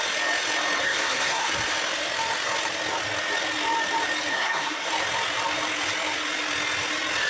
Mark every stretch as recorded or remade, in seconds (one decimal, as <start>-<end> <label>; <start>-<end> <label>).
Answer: 0.0-0.8 recorded; 0.8-1.5 remade; 1.5-4.3 recorded; 4.3-4.9 remade; 4.9-7.3 recorded